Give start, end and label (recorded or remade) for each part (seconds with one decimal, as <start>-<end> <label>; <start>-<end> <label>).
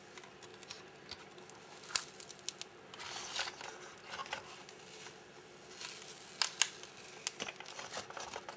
0.0-8.6 recorded